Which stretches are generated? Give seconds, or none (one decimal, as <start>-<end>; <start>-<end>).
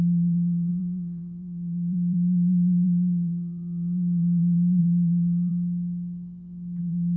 0.0-5.5; 6.8-7.2